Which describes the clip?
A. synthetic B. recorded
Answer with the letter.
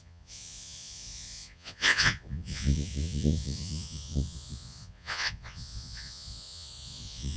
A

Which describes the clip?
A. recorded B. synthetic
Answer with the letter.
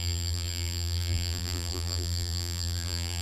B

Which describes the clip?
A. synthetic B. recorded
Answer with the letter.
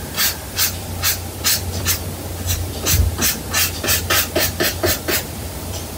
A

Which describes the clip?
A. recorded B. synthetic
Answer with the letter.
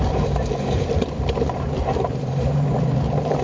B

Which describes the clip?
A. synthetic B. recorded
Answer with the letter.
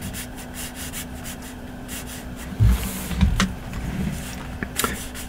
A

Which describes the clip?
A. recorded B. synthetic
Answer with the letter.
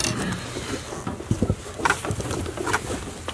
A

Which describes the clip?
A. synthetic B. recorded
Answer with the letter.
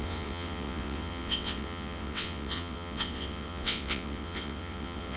A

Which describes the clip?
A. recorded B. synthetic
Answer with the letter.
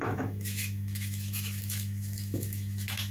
B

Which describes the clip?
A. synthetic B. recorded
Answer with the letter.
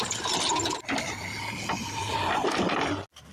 B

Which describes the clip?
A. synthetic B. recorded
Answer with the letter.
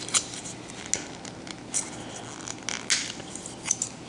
B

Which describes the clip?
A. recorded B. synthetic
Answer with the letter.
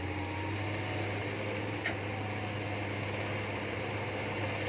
A